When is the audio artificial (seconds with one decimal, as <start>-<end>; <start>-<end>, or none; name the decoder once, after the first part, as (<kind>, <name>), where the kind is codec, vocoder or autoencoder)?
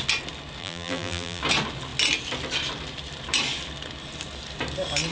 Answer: 0.6-1.4 (vocoder, BigVGAN v2)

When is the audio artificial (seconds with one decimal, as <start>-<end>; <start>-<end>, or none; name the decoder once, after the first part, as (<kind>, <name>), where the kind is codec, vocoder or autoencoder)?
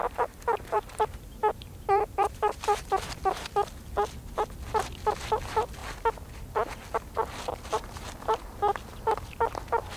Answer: 0.0-2.8 (vocoder, BigVGAN v2)